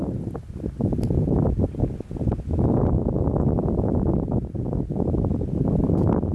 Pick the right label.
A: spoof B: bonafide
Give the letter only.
B